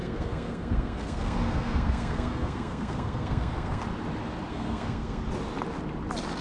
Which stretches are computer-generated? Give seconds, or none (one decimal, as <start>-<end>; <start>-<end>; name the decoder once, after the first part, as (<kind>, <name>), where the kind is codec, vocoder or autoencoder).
0.0-3.8 (codec, SNAC); 4.5-5.2